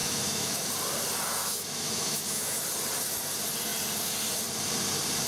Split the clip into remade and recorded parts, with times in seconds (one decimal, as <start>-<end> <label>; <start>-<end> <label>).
0.0-0.7 remade; 0.7-1.4 recorded; 1.4-2.6 remade; 2.6-5.3 recorded